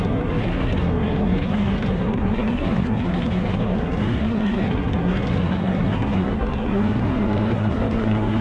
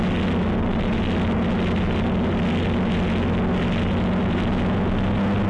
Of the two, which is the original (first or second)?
second